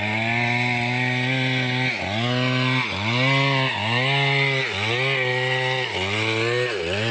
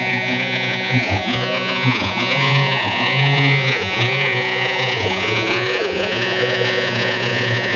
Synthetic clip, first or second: second